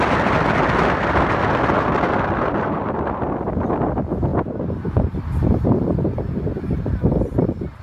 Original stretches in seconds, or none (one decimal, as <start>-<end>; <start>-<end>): 0.0-7.8